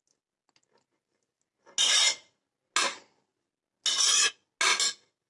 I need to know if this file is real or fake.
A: real